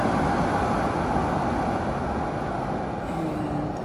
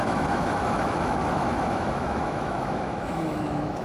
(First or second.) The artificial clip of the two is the second